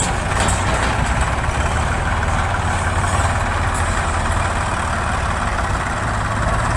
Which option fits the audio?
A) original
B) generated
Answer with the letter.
A